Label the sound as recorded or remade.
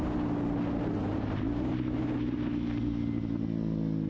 recorded